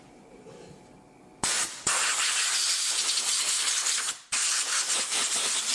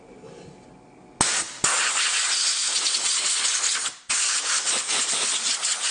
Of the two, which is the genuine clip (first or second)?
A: second